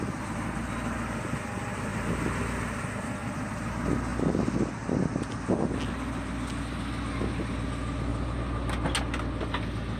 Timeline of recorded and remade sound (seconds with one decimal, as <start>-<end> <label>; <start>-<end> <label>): 0.0-10.0 recorded